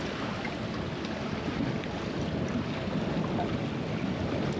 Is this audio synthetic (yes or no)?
no